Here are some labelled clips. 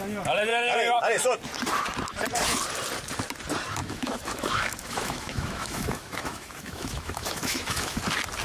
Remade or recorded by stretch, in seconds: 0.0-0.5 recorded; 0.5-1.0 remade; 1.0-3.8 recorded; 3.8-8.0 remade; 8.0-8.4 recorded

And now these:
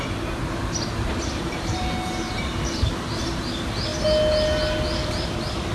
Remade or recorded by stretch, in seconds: 0.0-5.7 recorded

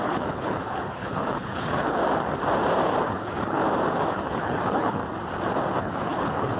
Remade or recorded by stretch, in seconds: 0.0-2.0 remade; 2.0-3.1 recorded; 3.1-3.6 remade; 3.6-4.1 recorded; 4.1-5.0 remade; 5.0-5.8 recorded; 5.8-6.6 remade

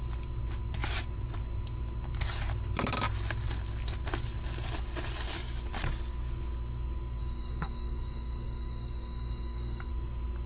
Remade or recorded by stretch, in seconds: 0.0-7.2 recorded; 7.2-9.9 remade; 9.9-10.5 recorded

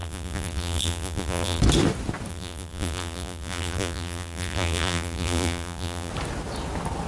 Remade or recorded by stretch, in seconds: 0.0-1.6 remade; 1.6-2.3 recorded; 2.3-6.1 remade; 6.1-7.1 recorded

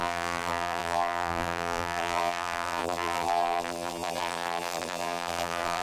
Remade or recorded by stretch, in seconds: 0.0-5.8 remade